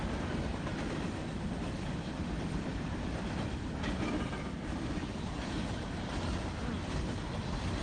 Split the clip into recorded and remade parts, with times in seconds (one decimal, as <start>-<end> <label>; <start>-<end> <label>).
0.0-7.8 recorded